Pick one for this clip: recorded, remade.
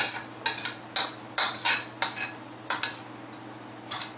recorded